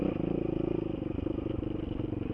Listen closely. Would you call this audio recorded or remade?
recorded